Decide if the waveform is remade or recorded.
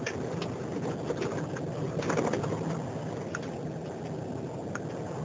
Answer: recorded